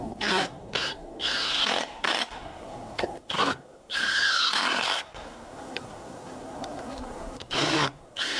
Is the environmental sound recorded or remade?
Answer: remade